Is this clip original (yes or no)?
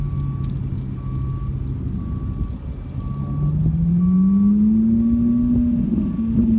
yes